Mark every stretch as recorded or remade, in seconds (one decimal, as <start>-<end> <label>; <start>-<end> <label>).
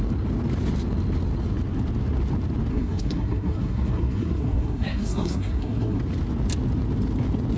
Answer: 0.0-2.7 recorded; 2.7-6.0 remade; 6.0-7.6 recorded